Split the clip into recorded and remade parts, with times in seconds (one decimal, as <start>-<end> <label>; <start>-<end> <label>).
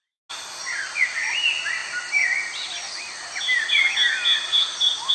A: 0.0-5.1 recorded